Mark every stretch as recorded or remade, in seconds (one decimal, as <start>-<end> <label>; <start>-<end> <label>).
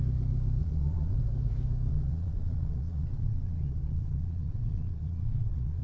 0.0-0.6 recorded; 0.6-1.2 remade; 1.2-1.9 recorded; 1.9-5.8 remade